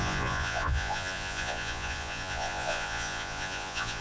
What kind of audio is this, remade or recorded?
remade